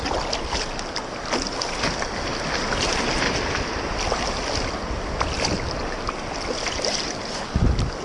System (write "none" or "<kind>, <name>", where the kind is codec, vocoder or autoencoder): none